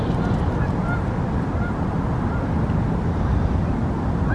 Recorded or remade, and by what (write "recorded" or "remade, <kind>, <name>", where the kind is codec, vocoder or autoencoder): recorded